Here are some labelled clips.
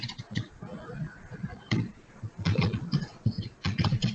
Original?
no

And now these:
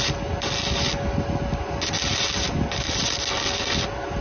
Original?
yes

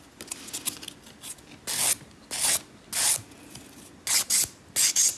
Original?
yes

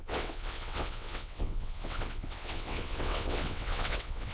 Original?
no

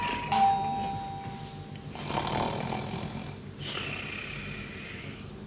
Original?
yes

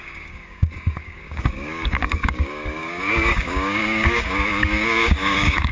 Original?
no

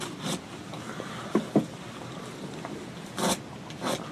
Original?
yes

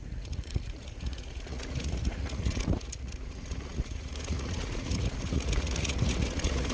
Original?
no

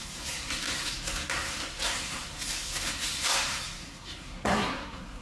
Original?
no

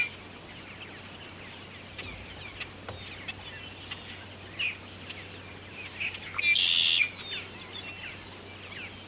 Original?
yes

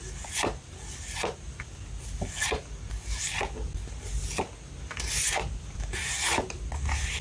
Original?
yes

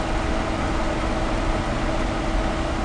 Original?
yes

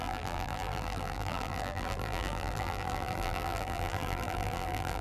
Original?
no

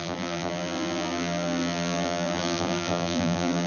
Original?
no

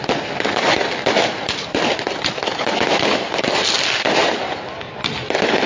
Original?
yes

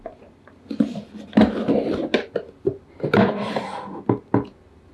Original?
yes